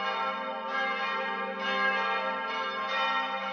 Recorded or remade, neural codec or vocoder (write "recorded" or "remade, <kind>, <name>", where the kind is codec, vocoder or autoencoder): recorded